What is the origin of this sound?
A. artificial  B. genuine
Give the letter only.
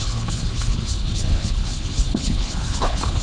A